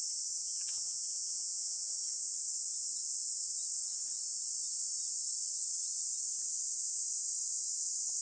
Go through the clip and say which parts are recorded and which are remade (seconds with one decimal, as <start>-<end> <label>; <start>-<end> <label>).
0.0-0.4 recorded; 0.4-1.9 remade; 1.9-8.2 recorded